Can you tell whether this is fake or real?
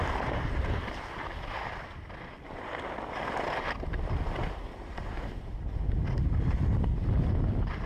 real